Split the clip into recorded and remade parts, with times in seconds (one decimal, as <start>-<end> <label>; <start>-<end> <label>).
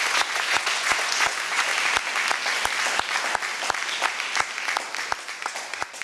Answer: 0.0-1.7 remade; 1.7-5.3 recorded; 5.3-6.0 remade